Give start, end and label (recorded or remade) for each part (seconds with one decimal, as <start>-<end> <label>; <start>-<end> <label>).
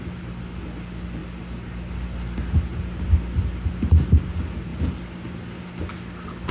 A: 0.0-6.5 recorded